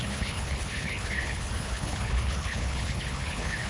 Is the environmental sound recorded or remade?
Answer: remade